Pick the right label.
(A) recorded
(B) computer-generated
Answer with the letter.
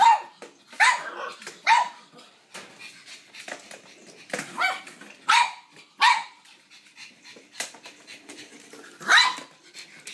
A